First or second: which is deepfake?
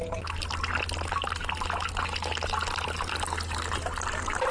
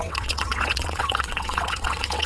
second